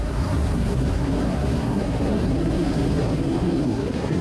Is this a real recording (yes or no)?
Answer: no